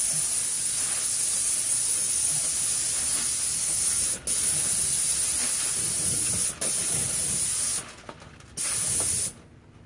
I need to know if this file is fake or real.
real